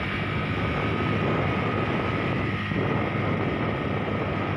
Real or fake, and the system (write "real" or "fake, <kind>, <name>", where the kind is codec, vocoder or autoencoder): real